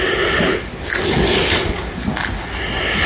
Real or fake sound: real